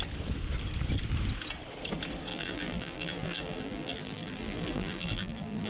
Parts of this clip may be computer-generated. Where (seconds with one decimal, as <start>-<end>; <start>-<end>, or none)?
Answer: 2.3-5.7